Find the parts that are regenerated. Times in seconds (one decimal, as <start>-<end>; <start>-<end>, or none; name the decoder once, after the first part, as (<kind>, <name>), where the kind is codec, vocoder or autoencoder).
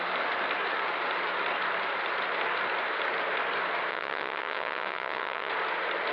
3.9-5.5 (vocoder, WaveNeXt)